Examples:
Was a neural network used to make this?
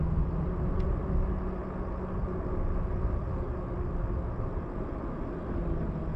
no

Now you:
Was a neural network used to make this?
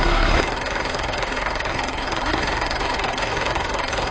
yes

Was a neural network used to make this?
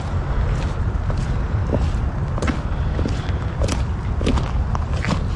no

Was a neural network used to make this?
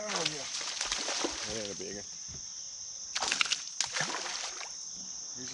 no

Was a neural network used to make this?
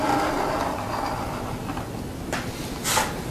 no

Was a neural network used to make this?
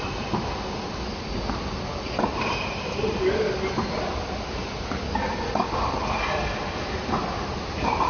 no